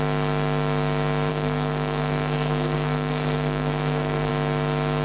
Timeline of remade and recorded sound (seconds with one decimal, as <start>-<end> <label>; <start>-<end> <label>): 0.0-1.3 recorded; 1.3-4.3 remade; 4.3-5.0 recorded